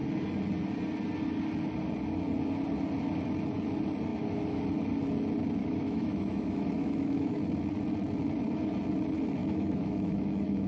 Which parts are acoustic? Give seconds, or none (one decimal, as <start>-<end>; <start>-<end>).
0.0-4.1; 4.6-5.6; 7.4-9.4